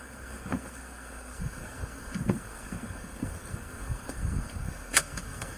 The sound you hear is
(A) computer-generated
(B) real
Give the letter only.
A